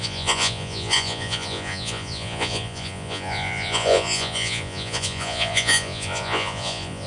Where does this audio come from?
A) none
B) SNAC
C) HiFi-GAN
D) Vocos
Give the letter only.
D